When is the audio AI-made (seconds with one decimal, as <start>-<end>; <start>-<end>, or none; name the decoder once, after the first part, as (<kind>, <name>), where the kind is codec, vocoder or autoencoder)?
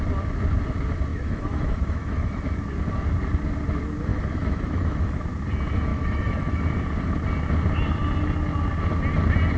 1.1-2.4 (autoencoder, DAC-VAE); 4.1-5.2; 5.9-6.6